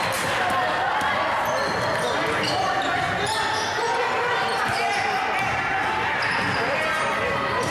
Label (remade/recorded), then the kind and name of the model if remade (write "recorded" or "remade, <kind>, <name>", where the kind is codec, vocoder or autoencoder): recorded